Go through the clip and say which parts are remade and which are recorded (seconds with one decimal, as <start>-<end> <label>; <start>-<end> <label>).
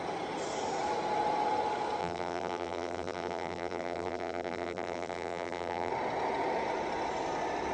0.0-2.0 recorded; 2.0-5.9 remade; 5.9-7.7 recorded